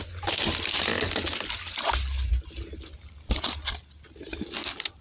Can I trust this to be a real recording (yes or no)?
yes